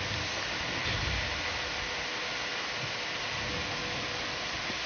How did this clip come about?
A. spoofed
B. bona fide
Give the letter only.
B